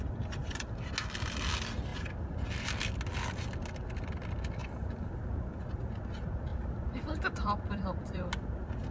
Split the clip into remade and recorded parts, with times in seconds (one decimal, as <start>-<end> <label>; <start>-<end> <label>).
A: 0.0-4.6 recorded; 4.6-6.0 remade; 6.0-6.5 recorded; 6.5-8.3 remade; 8.3-8.9 recorded

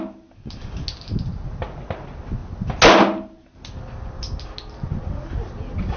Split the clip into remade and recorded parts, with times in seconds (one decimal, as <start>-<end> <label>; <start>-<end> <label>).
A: 0.0-6.0 recorded

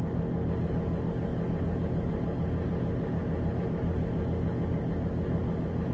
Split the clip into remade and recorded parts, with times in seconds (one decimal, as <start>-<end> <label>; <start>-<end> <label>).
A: 0.0-5.9 recorded

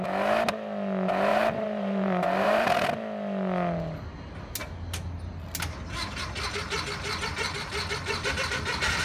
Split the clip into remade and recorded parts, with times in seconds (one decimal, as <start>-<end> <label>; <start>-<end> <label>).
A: 0.0-1.3 recorded; 1.3-2.9 remade; 2.9-9.0 recorded

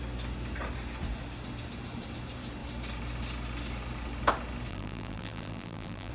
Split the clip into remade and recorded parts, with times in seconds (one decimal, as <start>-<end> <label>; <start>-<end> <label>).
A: 0.0-4.7 recorded; 4.7-6.1 remade